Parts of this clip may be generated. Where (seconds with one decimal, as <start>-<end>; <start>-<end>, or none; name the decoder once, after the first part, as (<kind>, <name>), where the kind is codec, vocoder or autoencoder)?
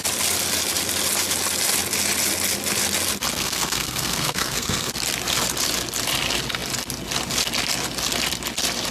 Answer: 3.3-4.9 (codec, SNAC)